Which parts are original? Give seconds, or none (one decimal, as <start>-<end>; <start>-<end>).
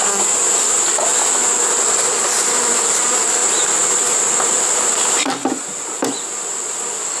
0.0-7.2